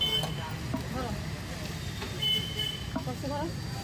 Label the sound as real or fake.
real